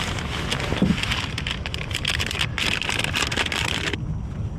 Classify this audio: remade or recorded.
recorded